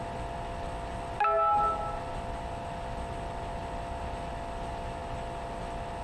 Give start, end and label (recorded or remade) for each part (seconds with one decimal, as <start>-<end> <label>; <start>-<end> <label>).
0.0-6.0 recorded

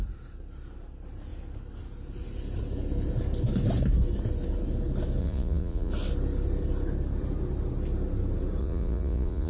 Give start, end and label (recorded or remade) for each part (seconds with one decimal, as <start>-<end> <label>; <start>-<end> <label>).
0.0-5.2 recorded; 5.2-5.9 remade; 5.9-8.6 recorded; 8.6-9.5 remade

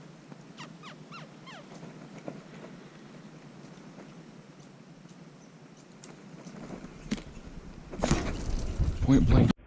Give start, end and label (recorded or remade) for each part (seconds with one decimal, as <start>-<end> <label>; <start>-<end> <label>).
0.0-6.2 recorded; 6.2-7.8 remade; 7.8-9.7 recorded

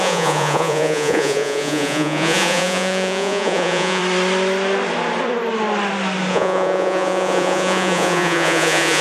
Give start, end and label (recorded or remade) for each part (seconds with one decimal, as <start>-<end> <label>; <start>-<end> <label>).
0.0-4.0 remade; 4.0-6.3 recorded; 6.3-9.0 remade

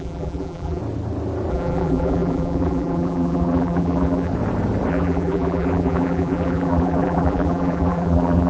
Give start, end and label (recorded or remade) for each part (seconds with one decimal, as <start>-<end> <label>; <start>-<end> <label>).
0.0-0.8 remade; 0.8-1.5 recorded; 1.5-4.3 remade; 4.3-4.9 recorded; 4.9-8.5 remade

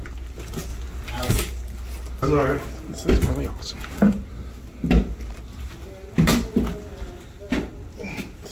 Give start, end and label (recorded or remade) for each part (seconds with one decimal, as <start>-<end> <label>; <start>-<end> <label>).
0.0-8.5 recorded

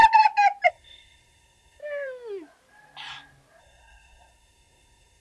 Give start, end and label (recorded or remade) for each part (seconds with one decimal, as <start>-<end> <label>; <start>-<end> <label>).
0.0-0.7 recorded; 0.7-1.8 remade; 1.8-3.6 recorded; 3.6-5.2 remade

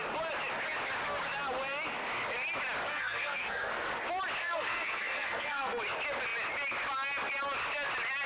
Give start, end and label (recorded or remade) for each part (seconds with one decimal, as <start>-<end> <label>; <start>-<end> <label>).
0.0-2.9 recorded; 2.9-4.0 remade; 4.0-4.4 recorded; 4.4-5.8 remade; 5.8-8.3 recorded